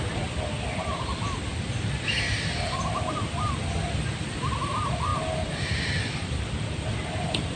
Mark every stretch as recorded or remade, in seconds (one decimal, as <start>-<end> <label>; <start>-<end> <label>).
0.0-1.5 recorded; 1.5-2.9 remade; 2.9-7.6 recorded